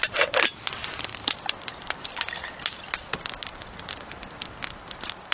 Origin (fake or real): real